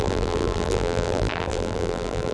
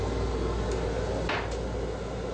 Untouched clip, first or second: second